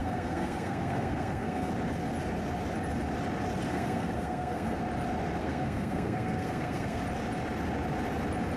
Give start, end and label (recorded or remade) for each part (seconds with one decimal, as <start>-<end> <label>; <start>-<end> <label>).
0.0-1.7 remade; 1.7-3.7 recorded; 3.7-4.8 remade; 4.8-5.4 recorded; 5.4-7.0 remade; 7.0-8.6 recorded